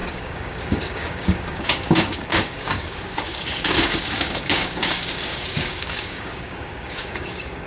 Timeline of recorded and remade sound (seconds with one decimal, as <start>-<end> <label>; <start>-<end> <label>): 0.0-7.7 remade